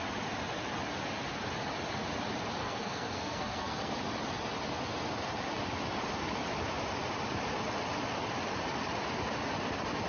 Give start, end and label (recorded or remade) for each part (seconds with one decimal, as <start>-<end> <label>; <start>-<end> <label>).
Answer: 0.0-2.6 recorded; 2.6-3.9 remade; 3.9-10.1 recorded